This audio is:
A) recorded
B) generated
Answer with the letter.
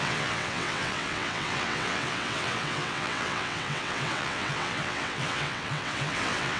B